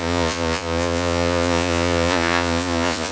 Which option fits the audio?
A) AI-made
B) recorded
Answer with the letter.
A